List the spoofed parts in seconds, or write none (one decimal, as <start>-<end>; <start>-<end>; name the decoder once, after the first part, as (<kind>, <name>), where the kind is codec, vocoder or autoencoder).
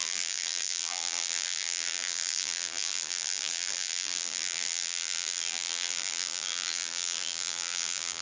0.0-8.2 (vocoder, BigVGAN v2)